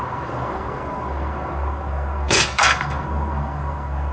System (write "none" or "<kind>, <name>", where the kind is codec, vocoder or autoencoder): codec, SNAC